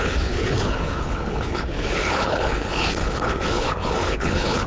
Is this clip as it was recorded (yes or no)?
no